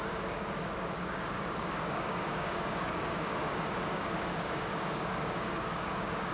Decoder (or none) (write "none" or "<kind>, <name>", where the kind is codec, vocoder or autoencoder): codec, DAC